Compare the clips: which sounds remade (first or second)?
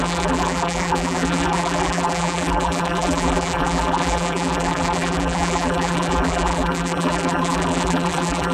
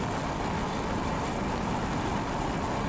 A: first